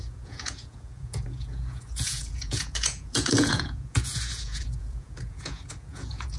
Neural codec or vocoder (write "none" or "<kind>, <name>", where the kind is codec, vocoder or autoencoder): vocoder, Vocos